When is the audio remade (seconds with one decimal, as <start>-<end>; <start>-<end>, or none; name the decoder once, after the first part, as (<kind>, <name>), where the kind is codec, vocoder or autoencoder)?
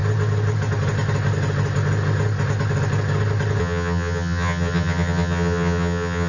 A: 3.6-6.3 (vocoder, HiFi-GAN)